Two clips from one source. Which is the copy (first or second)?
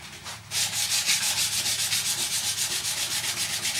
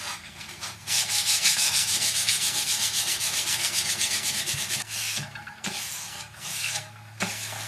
second